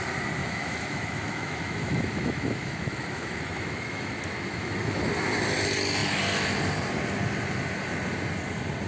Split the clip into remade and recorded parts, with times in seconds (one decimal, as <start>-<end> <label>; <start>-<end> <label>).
0.0-0.4 recorded; 0.4-5.0 remade; 5.0-8.9 recorded